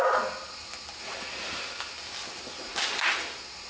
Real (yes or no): yes